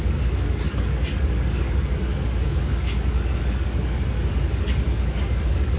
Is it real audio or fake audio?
fake